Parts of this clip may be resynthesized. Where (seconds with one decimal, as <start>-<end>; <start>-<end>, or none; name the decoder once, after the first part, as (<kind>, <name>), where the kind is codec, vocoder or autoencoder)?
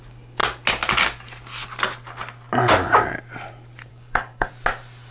3.9-4.5 (codec, DAC)